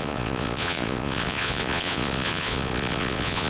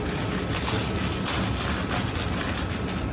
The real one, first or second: second